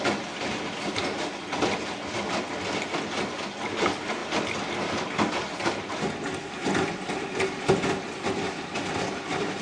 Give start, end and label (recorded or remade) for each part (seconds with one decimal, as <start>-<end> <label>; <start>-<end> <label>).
0.0-9.6 recorded